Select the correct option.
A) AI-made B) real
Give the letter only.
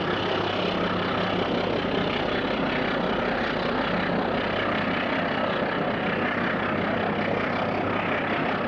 B